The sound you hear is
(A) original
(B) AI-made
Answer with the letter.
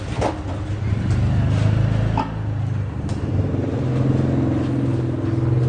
A